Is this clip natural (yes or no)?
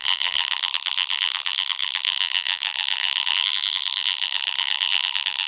no